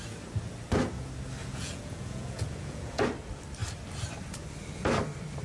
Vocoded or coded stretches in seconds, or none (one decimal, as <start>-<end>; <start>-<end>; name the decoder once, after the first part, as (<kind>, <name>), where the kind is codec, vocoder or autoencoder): 1.4-3.0 (vocoder, Vocos)